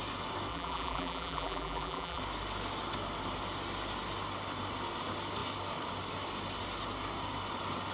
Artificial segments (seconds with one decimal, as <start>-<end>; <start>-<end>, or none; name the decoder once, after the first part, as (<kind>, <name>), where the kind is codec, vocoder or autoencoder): 0.5-2.2 (vocoder, BigVGAN v2)